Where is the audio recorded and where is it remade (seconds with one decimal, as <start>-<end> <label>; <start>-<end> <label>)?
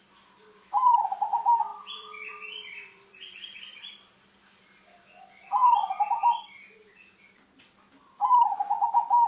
0.0-1.7 recorded; 1.7-4.1 remade; 4.1-9.3 recorded